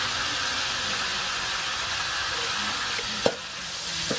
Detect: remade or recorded remade